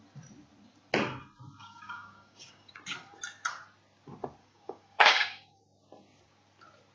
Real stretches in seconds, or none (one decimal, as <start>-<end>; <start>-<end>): 0.0-1.6; 2.7-4.4; 5.6-6.9